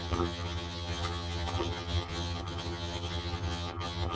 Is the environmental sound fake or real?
fake